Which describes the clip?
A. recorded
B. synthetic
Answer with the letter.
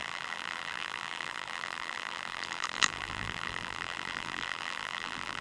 B